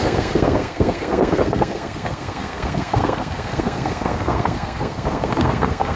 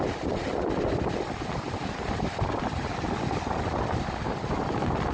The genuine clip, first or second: second